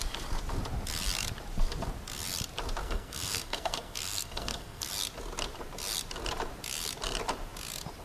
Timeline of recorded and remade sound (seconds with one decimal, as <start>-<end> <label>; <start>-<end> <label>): 0.0-2.8 recorded; 2.8-4.9 remade; 4.9-8.0 recorded